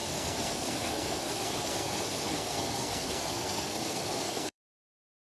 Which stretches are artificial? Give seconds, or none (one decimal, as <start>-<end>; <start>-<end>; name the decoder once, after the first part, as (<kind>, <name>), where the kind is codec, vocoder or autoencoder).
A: 0.0-5.2 (codec, SNAC)

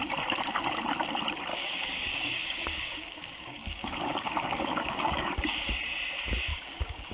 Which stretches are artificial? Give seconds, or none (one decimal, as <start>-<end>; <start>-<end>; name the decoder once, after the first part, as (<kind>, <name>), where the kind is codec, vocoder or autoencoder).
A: 1.5-5.7 (codec, DAC); 6.5-7.1